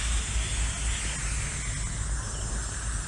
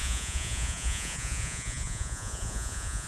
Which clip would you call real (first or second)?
first